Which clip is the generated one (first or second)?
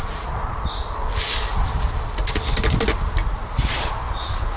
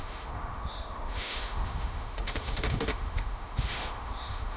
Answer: second